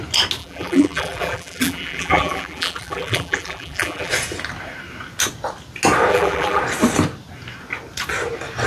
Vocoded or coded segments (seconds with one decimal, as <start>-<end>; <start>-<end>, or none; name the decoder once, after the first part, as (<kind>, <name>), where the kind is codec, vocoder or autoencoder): 0.4-4.1 (vocoder, BigVGAN v2); 6.1-6.6